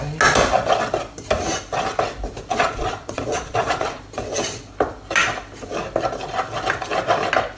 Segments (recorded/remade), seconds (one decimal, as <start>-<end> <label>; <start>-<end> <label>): 0.0-2.5 recorded; 2.5-4.0 remade; 4.0-7.6 recorded